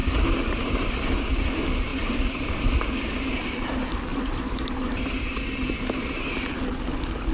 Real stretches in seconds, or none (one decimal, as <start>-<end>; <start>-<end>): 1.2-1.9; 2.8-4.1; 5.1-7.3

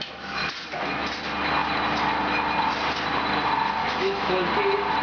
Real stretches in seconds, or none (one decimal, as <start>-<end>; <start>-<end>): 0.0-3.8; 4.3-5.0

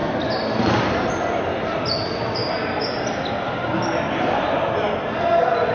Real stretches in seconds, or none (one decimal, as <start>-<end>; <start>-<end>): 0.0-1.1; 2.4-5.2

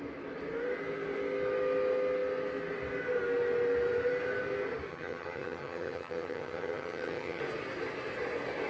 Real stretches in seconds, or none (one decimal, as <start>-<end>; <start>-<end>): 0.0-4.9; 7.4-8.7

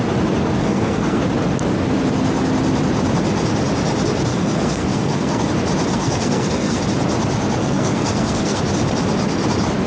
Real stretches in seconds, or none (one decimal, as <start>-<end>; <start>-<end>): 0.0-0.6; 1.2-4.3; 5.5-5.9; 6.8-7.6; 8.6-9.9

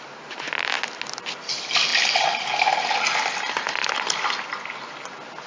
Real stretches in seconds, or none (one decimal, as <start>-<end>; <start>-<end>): 0.0-5.5